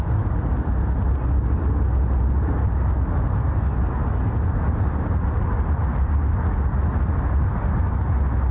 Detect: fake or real real